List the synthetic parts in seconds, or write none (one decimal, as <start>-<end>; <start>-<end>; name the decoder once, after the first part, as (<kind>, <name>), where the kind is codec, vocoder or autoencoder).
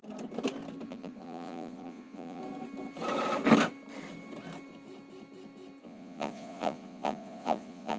0.9-2.4 (vocoder, Vocos); 5.8-8.0